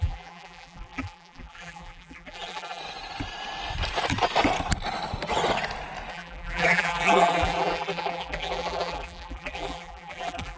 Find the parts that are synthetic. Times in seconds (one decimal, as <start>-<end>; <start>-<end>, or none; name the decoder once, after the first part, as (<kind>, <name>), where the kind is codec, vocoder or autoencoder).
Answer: 0.0-2.8 (vocoder, BigVGAN v2); 6.1-10.6